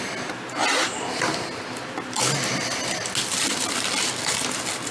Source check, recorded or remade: recorded